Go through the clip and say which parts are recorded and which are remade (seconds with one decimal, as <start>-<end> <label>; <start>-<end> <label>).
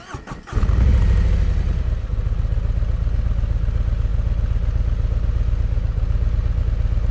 0.0-7.1 recorded